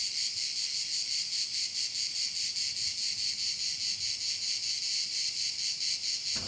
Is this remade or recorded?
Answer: recorded